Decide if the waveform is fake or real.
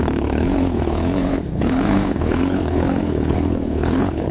fake